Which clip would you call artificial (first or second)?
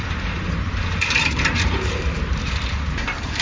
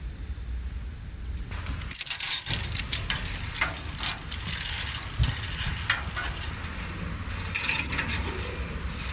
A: first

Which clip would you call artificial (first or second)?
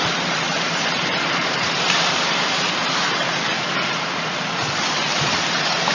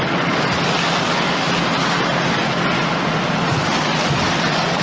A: first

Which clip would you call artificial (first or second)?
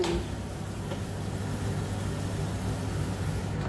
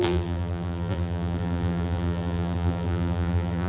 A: second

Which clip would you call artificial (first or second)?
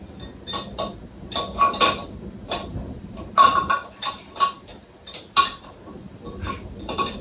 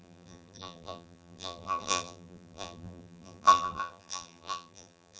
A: second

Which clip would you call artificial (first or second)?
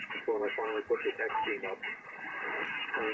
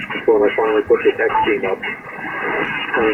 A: first